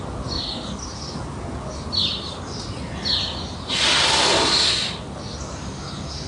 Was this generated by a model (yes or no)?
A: no